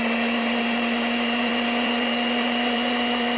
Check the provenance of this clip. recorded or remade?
remade